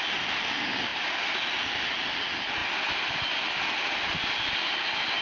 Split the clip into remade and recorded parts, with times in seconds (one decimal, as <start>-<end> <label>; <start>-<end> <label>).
0.0-5.2 recorded